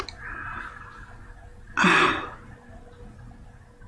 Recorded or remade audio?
recorded